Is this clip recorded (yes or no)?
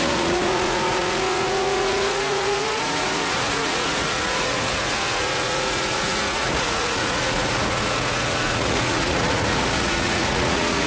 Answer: no